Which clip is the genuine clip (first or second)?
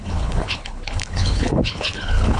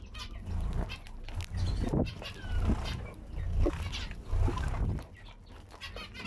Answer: second